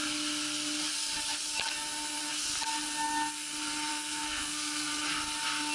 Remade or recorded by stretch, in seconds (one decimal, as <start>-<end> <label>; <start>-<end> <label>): 0.0-3.9 recorded; 3.9-4.9 remade; 4.9-5.7 recorded